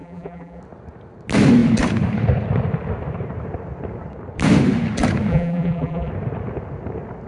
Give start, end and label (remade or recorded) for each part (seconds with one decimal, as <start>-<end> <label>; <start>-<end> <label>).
0.0-0.6 remade; 0.6-5.3 recorded; 5.3-6.1 remade; 6.1-7.3 recorded